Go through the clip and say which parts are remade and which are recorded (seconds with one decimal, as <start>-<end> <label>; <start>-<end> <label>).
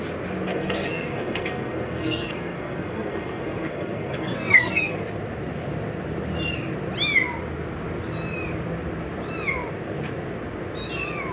0.0-0.5 recorded; 0.5-4.9 remade; 4.9-11.3 recorded